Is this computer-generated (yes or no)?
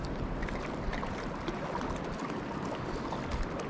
no